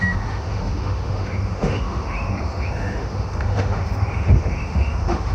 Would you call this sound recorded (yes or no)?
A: no